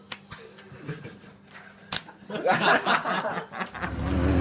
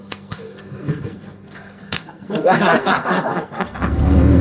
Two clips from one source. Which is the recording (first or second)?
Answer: first